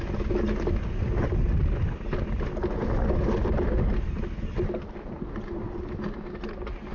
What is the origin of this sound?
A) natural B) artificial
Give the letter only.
A